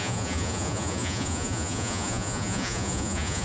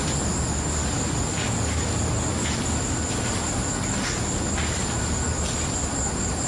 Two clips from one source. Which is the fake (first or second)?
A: first